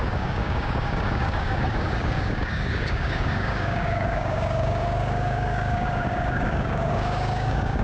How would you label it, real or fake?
fake